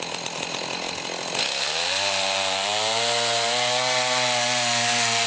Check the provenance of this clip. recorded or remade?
recorded